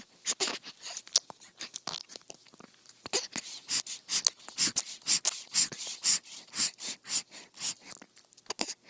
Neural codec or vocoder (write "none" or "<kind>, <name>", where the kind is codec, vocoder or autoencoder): none